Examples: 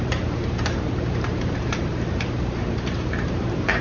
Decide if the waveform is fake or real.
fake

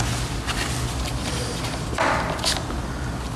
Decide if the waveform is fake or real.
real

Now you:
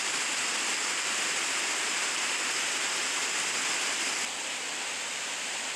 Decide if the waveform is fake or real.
real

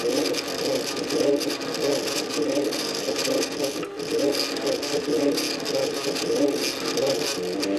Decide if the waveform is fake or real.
real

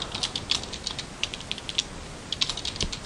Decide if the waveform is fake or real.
real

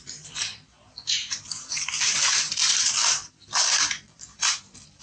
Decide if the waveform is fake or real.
fake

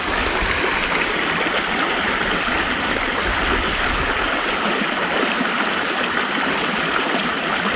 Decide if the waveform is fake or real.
real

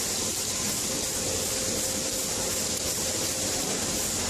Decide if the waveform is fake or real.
real